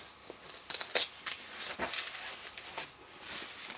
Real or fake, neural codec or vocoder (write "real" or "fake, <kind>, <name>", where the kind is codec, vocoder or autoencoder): real